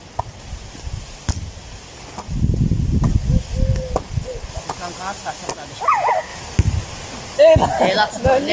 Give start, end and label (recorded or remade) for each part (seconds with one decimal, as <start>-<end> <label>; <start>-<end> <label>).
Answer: 0.0-8.5 recorded